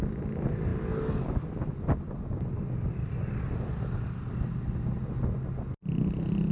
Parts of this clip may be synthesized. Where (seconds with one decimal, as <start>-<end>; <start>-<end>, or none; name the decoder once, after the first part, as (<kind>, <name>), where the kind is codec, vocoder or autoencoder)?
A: none